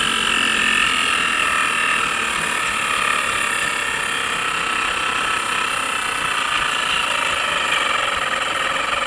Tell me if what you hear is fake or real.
real